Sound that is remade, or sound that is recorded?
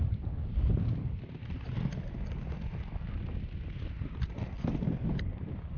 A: recorded